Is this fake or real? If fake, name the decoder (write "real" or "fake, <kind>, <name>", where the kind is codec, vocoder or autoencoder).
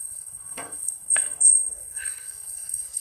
fake, codec, SNAC